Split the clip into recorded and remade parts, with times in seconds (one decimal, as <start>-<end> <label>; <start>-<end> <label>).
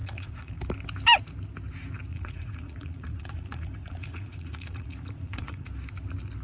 0.0-0.6 remade; 0.6-2.1 recorded; 2.1-5.7 remade; 5.7-6.4 recorded